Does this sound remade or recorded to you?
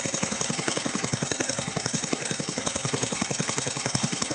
remade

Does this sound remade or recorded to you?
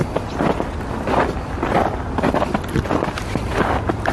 recorded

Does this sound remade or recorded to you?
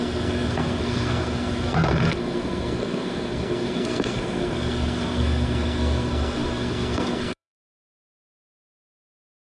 remade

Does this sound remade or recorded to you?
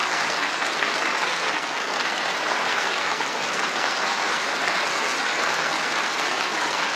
remade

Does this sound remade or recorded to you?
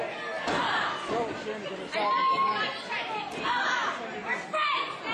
recorded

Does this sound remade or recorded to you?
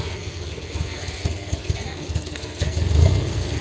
remade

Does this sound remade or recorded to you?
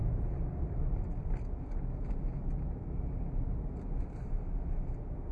recorded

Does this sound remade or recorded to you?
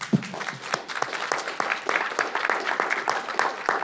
recorded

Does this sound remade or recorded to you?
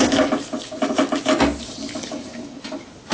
recorded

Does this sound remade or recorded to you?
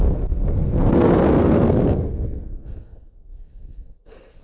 remade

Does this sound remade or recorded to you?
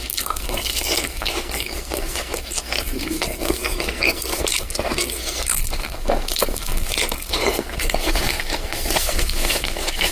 remade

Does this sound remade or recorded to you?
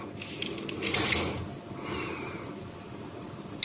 recorded